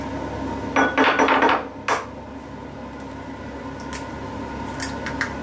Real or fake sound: real